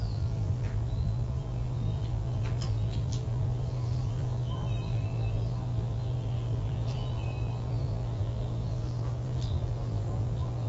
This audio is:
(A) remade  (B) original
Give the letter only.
A